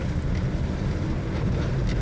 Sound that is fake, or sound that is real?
real